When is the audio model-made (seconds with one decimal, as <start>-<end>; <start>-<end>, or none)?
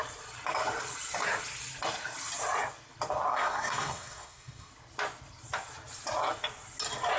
3.3-4.7